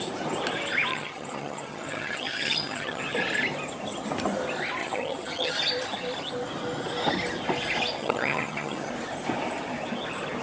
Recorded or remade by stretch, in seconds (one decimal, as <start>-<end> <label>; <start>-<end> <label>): 0.0-0.9 recorded; 0.9-3.0 remade; 3.0-4.8 recorded; 4.8-5.5 remade; 5.5-8.0 recorded; 8.0-8.9 remade; 8.9-10.4 recorded

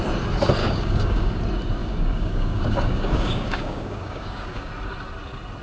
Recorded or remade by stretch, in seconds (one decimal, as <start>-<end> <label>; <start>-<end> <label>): 0.0-0.6 recorded; 0.6-1.4 remade; 1.4-1.8 recorded; 1.8-4.7 remade; 4.7-5.6 recorded

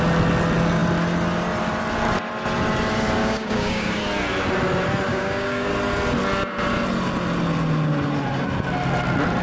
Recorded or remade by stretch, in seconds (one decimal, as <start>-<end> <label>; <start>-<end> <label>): 0.0-3.2 recorded; 3.2-4.0 remade; 4.0-5.1 recorded; 5.1-5.7 remade; 5.7-9.4 recorded

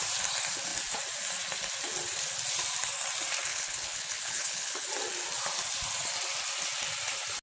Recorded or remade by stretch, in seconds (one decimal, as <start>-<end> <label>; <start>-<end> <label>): 0.0-3.5 recorded; 3.5-4.9 remade; 4.9-7.4 recorded

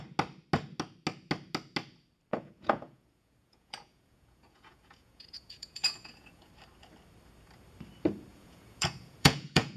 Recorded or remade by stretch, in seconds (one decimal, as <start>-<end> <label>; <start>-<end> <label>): 0.0-2.3 recorded; 2.3-6.5 remade; 6.5-8.3 recorded; 8.3-9.8 remade

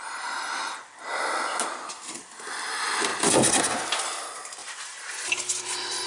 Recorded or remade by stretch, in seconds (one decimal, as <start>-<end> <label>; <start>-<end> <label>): 0.0-6.1 recorded

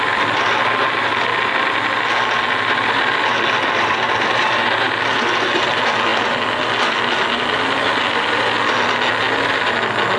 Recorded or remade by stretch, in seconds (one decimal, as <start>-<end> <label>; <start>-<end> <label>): 0.0-10.2 recorded